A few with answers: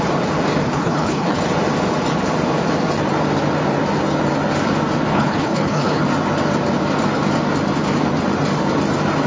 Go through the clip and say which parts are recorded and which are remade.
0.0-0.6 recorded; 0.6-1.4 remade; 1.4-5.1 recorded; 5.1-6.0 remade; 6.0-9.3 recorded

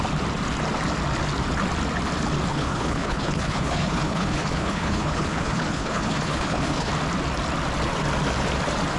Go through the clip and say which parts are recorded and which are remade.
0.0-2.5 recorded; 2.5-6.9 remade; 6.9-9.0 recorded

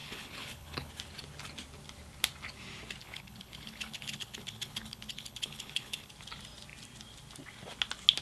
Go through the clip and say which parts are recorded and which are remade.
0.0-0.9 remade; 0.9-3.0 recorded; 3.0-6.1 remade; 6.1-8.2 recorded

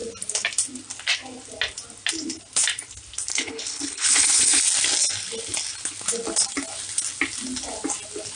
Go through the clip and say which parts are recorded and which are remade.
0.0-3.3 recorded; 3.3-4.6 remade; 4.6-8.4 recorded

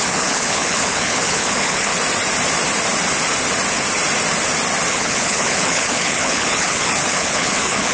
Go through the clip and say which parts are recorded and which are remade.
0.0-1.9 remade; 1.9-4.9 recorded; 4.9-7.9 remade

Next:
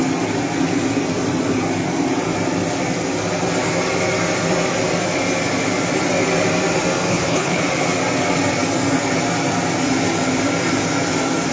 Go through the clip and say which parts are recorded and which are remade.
0.0-7.1 recorded; 7.1-7.6 remade; 7.6-11.5 recorded

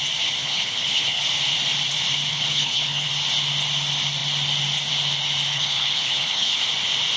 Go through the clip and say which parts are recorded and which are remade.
0.0-0.4 recorded; 0.4-1.2 remade; 1.2-2.3 recorded; 2.3-3.1 remade; 3.1-5.5 recorded; 5.5-6.6 remade; 6.6-7.2 recorded

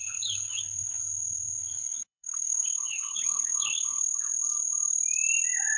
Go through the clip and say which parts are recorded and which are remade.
0.0-1.0 remade; 1.0-1.6 recorded; 1.6-4.3 remade; 4.3-5.8 recorded